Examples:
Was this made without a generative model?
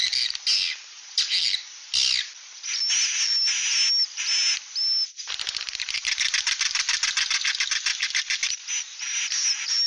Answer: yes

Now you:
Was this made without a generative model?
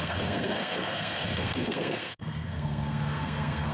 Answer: no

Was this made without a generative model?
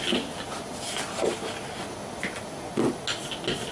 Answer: yes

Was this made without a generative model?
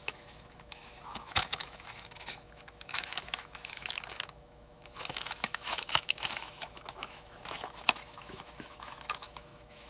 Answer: no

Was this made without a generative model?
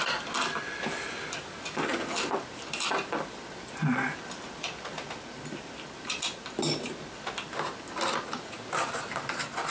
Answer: yes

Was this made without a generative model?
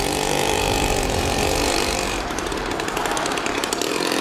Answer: no